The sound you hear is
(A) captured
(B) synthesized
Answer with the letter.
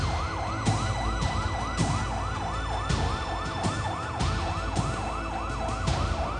A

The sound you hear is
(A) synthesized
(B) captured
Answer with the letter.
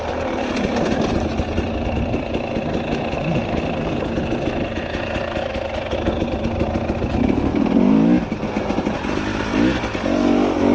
B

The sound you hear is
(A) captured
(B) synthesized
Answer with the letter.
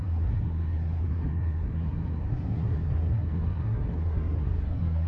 B